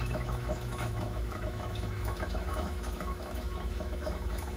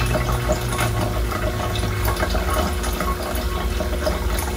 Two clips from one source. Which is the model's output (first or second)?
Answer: first